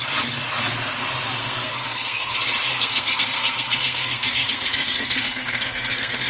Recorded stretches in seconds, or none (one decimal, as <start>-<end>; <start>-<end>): 0.0-1.4; 2.3-2.7